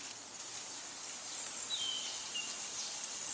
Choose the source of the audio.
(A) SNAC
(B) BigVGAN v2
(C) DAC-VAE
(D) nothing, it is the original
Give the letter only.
D